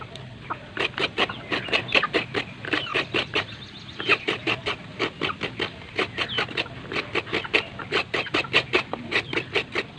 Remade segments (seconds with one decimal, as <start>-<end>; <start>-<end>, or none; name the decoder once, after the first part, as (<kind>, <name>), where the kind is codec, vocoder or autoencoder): none